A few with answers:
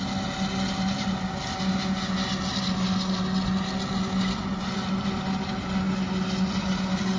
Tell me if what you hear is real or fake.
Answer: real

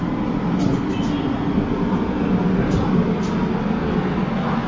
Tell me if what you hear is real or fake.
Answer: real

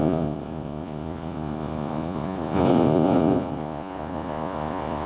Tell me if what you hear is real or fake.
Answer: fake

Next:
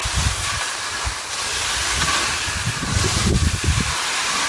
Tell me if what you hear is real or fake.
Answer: real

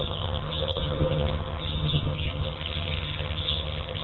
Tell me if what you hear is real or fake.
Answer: fake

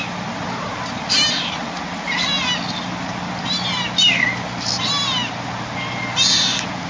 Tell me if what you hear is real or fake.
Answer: real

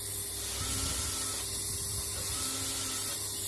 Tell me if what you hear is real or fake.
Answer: real